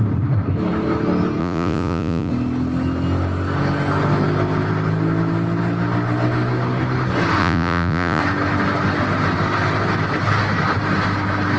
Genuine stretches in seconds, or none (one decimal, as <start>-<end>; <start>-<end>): 0.0-1.4; 2.3-7.4; 8.2-11.6